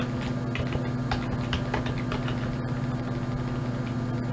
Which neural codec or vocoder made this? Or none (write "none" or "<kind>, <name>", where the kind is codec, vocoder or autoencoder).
none